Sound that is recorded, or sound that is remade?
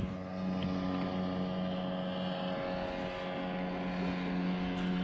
recorded